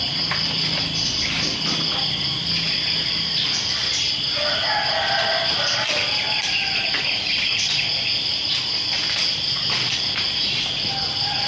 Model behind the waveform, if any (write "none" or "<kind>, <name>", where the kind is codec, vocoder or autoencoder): none